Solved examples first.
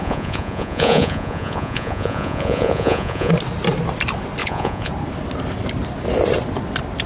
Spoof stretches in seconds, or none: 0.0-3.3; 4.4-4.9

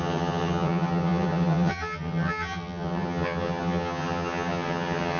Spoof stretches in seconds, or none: 0.0-5.2

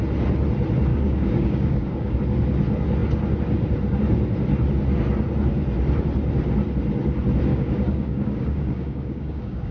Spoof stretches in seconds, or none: 0.9-2.2; 7.5-9.7

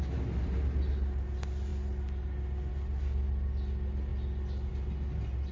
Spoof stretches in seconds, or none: none